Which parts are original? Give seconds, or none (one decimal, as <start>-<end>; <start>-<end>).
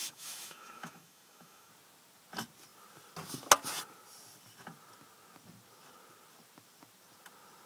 1.7-7.7